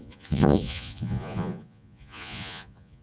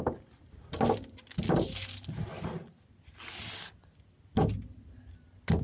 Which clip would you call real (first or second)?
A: second